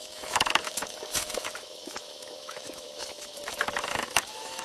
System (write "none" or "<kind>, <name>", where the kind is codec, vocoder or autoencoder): autoencoder, DAC-VAE